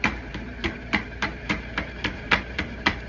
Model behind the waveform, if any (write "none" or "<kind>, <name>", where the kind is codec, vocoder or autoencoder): vocoder, BigVGAN v2